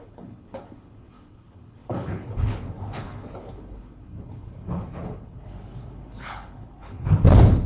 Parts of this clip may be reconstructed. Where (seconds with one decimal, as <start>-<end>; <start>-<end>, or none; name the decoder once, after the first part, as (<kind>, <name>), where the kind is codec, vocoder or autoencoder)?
0.0-7.7 (codec, HILCodec)